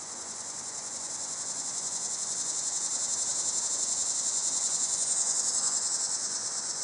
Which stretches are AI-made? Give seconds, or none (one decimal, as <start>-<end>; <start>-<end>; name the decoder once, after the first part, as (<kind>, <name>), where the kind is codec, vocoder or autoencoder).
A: 0.0-2.9 (vocoder, Vocos); 3.7-6.8